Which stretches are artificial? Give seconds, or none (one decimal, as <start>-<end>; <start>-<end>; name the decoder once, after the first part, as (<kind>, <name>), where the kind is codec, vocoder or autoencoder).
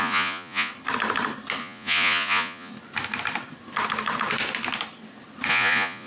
0.0-0.7 (vocoder, Vocos); 1.6-2.7; 5.5-6.1